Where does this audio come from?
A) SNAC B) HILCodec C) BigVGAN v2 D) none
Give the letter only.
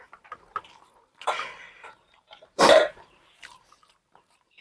C